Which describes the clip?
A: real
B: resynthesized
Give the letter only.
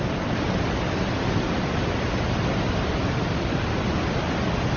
A